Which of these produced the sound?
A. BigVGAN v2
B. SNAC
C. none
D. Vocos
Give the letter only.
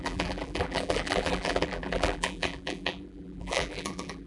A